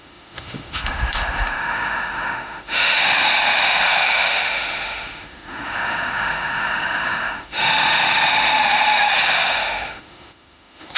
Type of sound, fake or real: fake